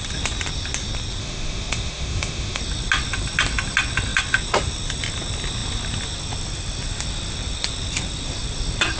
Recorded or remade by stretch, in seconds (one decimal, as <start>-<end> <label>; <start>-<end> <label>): 0.0-1.2 recorded; 1.2-2.6 remade; 2.6-9.0 recorded